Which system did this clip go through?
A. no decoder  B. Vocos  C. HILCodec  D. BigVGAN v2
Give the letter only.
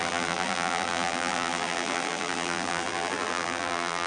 D